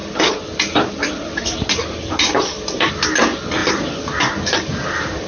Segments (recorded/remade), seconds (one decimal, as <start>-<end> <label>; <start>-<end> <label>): 0.0-3.6 recorded; 3.6-5.3 remade